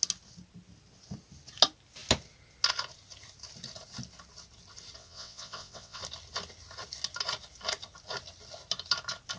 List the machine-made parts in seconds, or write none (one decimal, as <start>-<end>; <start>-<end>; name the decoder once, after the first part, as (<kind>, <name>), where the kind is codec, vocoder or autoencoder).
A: 5.0-6.0 (vocoder, WaveNeXt)